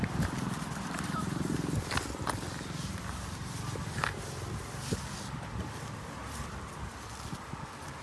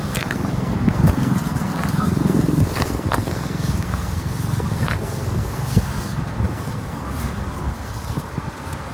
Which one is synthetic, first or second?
second